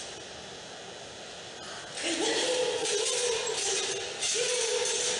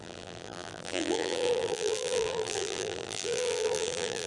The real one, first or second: first